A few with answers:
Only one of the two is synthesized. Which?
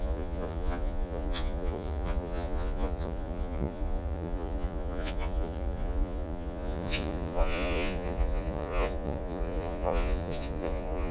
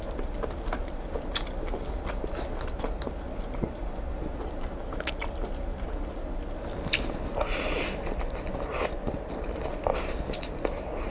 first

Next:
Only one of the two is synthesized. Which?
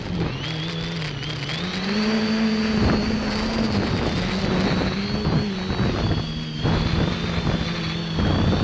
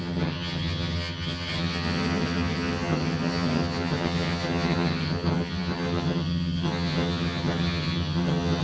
second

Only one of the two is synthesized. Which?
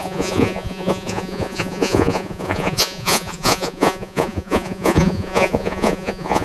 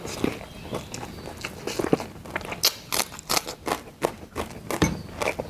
first